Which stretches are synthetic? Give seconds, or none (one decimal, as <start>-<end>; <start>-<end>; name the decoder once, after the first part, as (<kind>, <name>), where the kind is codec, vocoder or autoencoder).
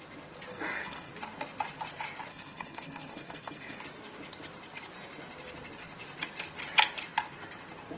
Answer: 0.5-1.1 (codec, SNAC); 2.3-3.8